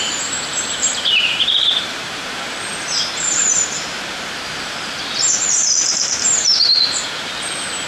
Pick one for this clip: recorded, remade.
remade